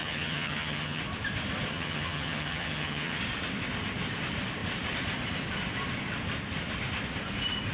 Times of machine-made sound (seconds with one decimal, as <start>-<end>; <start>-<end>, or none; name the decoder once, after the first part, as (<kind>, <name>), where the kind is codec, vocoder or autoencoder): 0.0-1.0 (vocoder, HiFi-GAN); 1.7-3.2